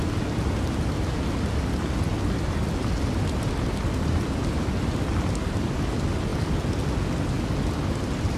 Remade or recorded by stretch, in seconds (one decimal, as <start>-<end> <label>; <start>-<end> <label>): 0.0-8.4 recorded